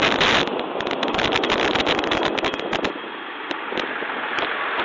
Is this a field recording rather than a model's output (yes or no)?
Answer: yes